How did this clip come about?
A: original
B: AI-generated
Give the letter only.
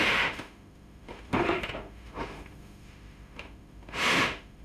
B